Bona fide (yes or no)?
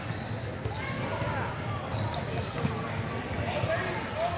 yes